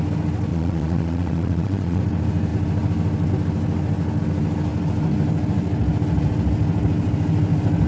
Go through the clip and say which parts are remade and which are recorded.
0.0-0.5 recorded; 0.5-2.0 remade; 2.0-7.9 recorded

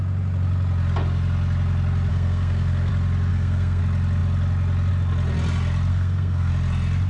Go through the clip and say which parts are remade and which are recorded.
0.0-2.1 recorded; 2.1-2.9 remade; 2.9-3.3 recorded; 3.3-3.8 remade; 3.8-5.9 recorded; 5.9-6.5 remade; 6.5-7.1 recorded